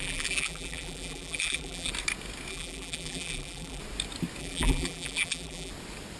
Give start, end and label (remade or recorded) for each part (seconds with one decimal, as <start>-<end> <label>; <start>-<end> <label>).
0.0-1.9 remade; 1.9-2.5 recorded; 2.5-3.8 remade; 3.8-4.4 recorded; 4.4-5.7 remade; 5.7-6.2 recorded